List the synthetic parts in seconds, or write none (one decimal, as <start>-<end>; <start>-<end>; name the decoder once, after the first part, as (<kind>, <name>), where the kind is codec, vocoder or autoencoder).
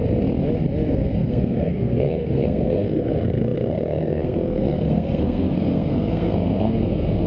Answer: 0.9-7.3 (codec, SNAC)